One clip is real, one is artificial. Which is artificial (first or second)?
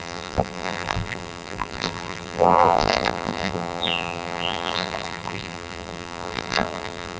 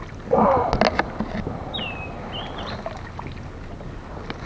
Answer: first